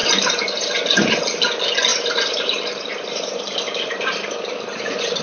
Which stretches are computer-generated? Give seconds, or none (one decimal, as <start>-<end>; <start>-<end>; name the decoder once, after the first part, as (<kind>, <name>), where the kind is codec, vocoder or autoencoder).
0.0-1.2 (vocoder, BigVGAN v2); 1.9-5.2